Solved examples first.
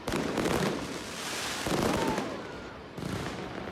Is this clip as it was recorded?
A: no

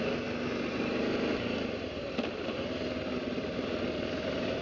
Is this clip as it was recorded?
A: no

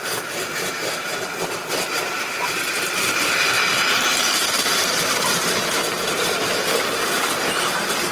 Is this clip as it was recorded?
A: no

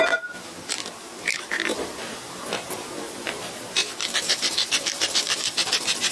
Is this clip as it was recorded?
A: no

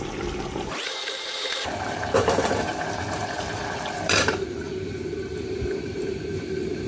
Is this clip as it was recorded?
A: no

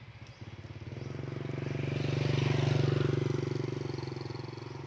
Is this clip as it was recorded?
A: yes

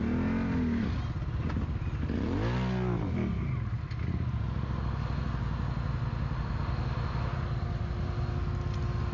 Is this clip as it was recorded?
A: yes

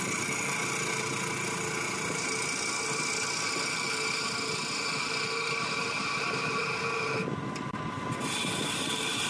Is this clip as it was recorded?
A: yes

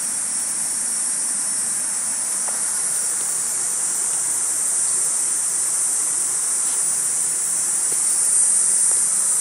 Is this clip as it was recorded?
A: no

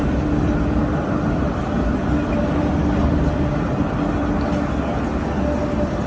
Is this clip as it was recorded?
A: yes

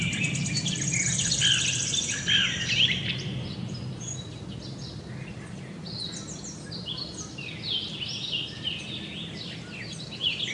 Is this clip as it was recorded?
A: yes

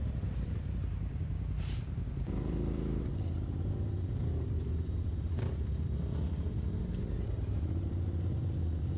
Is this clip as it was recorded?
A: no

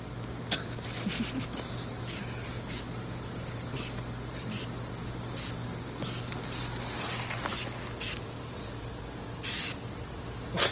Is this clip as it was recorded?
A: yes